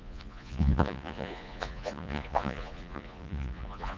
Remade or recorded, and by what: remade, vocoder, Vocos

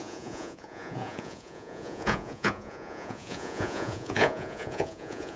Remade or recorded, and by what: remade, vocoder, Vocos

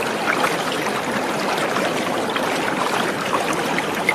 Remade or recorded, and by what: recorded